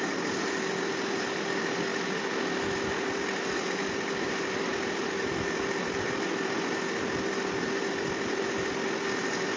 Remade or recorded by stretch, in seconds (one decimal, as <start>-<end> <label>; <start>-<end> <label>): 0.0-9.6 recorded